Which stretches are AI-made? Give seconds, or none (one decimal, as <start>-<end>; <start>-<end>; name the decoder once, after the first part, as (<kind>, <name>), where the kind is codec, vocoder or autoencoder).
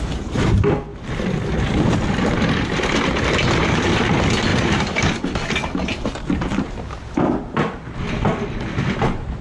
0.9-3.2 (vocoder, BigVGAN v2); 4.5-5.0